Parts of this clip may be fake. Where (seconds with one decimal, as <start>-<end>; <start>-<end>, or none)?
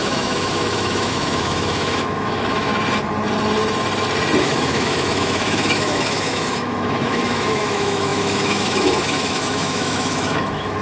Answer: 0.0-2.7; 4.4-10.8